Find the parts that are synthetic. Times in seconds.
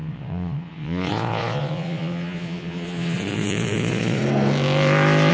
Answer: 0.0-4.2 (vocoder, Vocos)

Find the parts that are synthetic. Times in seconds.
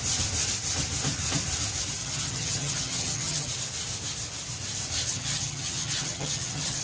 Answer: 2.0-3.5 (vocoder, HiFi-GAN); 5.1-6.8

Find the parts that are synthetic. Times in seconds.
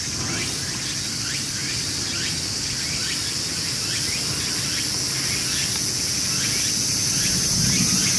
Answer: none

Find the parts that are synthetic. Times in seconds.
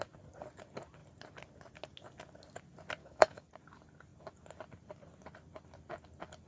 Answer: 3.0-3.5 (autoencoder, DAC-VAE)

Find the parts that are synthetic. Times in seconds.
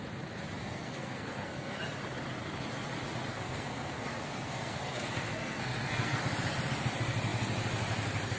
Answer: 0.6-1.8 (codec, SNAC); 3.3-6.2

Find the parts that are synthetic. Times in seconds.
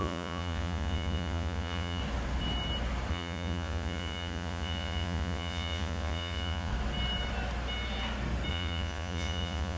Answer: 0.0-2.0 (vocoder, Vocos); 3.1-6.7; 8.5-9.8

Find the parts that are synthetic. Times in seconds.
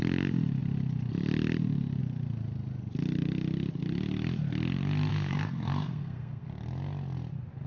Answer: 5.1-6.5 (codec, SNAC)